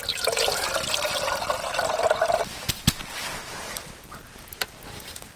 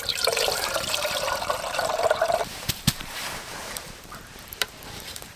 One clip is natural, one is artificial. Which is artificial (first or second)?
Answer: second